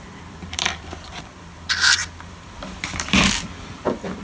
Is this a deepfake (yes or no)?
yes